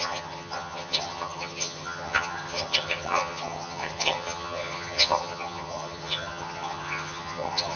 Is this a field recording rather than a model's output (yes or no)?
no